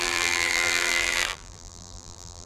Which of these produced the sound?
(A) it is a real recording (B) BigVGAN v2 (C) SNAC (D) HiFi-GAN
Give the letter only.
B